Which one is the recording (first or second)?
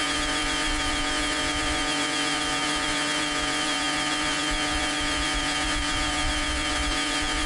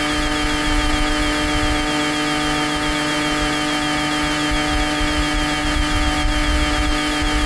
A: second